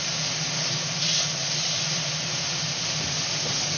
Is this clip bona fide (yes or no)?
yes